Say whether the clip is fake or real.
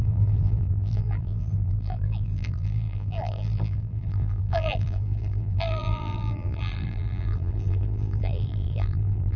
fake